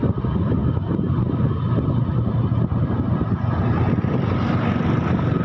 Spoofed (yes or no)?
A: no